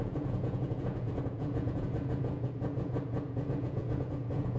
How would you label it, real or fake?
fake